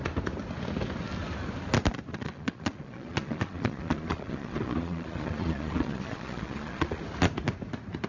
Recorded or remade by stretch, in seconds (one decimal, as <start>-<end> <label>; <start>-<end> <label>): 0.0-2.1 recorded; 2.1-7.0 remade; 7.0-8.1 recorded